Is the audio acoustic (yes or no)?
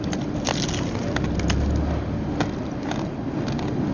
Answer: yes